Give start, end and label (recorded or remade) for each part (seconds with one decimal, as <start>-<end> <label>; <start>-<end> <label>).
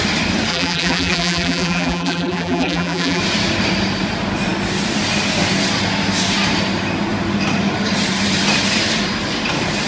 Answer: 0.0-0.5 recorded; 0.5-3.2 remade; 3.2-9.9 recorded